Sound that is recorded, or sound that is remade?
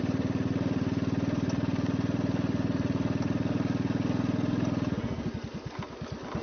recorded